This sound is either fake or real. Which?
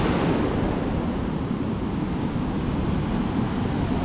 real